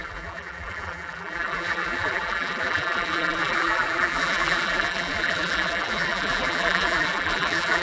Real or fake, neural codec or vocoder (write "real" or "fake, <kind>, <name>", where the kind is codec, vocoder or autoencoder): fake, vocoder, BigVGAN v2